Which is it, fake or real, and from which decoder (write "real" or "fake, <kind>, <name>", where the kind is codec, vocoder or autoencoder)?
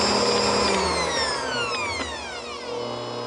real